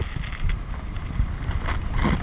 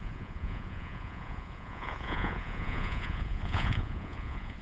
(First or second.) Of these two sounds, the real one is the first